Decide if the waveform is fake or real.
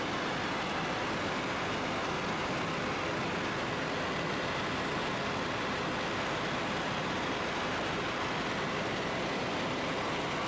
real